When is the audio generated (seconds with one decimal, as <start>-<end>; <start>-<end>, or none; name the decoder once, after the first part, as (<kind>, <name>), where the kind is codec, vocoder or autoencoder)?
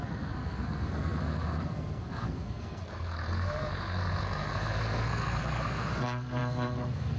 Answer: 0.0-7.2 (codec, SNAC)